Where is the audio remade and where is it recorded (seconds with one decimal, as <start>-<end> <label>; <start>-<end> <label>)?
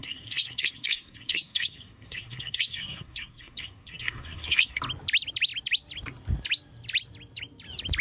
0.0-4.8 remade; 4.8-8.0 recorded